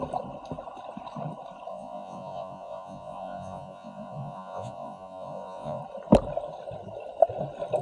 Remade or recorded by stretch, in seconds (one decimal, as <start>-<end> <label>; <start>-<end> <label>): 0.0-1.7 recorded; 1.7-5.8 remade; 5.8-7.8 recorded